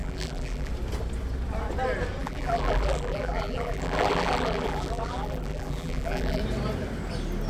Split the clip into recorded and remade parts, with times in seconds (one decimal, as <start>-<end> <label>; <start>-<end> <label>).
0.0-0.7 remade; 0.7-2.2 recorded; 2.2-6.4 remade; 6.4-7.5 recorded